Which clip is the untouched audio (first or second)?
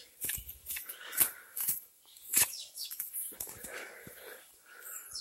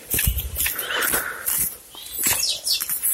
second